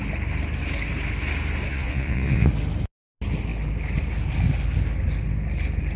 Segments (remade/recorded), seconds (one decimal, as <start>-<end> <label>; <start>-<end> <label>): 0.0-1.7 recorded; 1.7-2.5 remade; 2.5-6.0 recorded